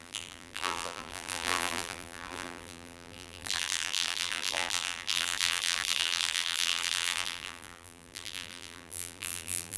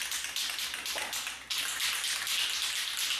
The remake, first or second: first